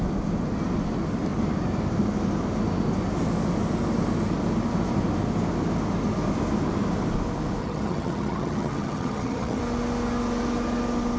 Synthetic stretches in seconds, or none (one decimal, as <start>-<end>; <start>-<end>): 7.6-9.6